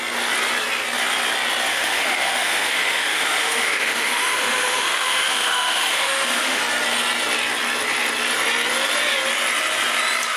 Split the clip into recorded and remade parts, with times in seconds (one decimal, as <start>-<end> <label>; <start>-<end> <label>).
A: 0.0-1.7 recorded; 1.7-6.6 remade; 6.6-10.4 recorded